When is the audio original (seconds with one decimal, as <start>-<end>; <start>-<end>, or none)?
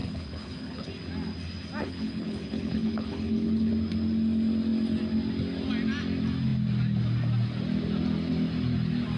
0.9-1.8; 3.7-9.2